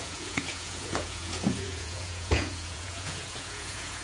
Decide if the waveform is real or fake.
fake